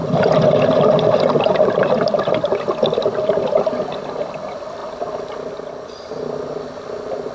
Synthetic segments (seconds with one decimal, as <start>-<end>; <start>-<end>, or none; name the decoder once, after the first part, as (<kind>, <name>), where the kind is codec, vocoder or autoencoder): 0.0-7.3 (vocoder, BigVGAN v2)